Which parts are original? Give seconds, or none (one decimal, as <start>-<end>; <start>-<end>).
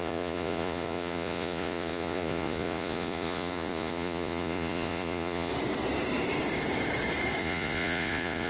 5.5-7.4